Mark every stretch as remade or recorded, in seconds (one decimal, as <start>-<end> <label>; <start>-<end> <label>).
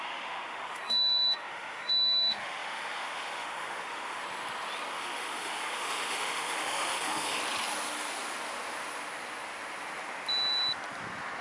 0.0-4.2 remade; 4.2-4.9 recorded; 4.9-7.4 remade; 7.4-11.4 recorded